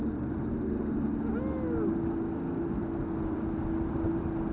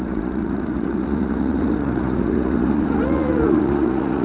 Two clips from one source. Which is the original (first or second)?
first